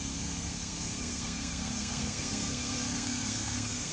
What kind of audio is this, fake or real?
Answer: fake